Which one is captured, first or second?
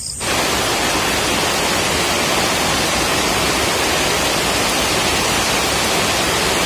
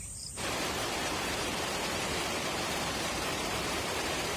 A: first